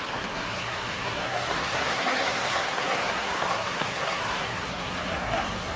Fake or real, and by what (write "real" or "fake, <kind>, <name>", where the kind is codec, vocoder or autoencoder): fake, codec, SNAC